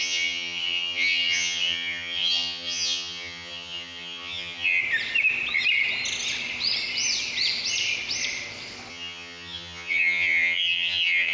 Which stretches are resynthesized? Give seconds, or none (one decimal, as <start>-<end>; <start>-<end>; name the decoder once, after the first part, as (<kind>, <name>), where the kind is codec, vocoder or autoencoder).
0.0-4.8 (vocoder, HiFi-GAN); 8.9-11.3